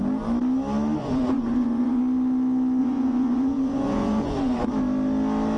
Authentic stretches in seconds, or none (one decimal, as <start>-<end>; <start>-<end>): 0.0-1.0; 2.0-2.8; 4.7-5.6

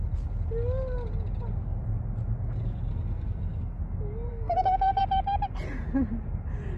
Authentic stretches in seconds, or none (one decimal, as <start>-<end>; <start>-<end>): 0.0-2.9; 3.8-4.3; 5.0-6.8

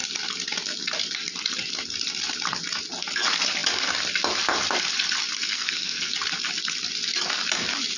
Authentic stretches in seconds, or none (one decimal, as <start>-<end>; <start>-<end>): 0.0-5.4; 6.1-8.0

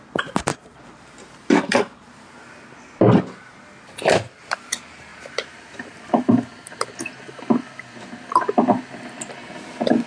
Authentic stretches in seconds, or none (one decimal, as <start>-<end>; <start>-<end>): 0.0-0.5; 2.2-5.1; 6.2-10.1